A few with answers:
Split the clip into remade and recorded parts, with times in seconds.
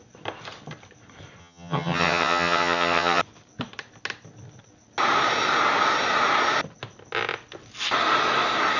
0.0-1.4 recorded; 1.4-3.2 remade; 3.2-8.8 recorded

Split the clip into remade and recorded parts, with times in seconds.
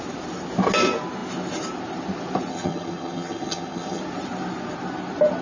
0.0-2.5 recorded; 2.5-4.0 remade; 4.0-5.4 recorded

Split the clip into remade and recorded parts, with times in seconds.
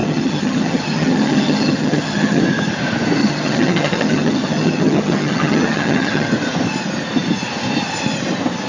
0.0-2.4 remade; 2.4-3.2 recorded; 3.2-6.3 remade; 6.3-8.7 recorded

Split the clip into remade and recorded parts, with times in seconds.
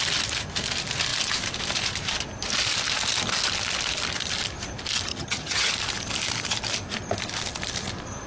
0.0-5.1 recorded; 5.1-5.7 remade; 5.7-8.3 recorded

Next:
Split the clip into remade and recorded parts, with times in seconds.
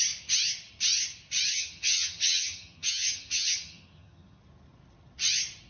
0.0-1.5 recorded; 1.5-4.4 remade; 4.4-5.7 recorded